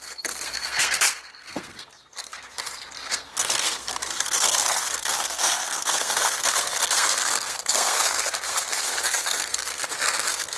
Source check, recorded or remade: remade